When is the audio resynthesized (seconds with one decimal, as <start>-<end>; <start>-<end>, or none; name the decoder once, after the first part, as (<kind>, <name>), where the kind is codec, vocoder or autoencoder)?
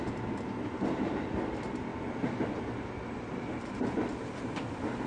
none